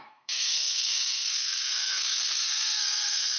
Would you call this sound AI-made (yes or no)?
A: yes